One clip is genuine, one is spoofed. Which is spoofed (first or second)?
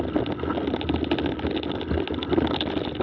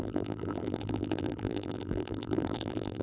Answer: second